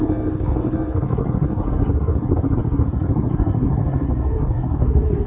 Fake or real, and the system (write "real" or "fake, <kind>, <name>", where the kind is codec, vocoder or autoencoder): fake, codec, SNAC